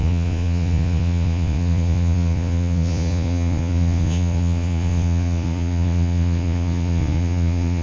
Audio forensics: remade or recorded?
remade